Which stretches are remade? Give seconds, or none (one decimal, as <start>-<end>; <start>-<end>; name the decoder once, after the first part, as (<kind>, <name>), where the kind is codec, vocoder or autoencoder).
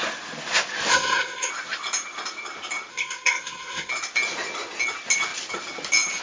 0.9-1.5 (codec, SNAC); 2.9-3.9